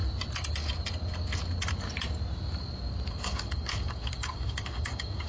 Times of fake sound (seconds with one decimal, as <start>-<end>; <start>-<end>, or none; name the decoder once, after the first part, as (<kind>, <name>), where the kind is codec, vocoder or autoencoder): 3.1-5.3 (codec, DAC)